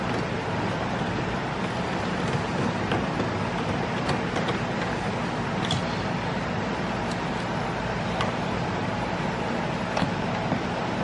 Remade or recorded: recorded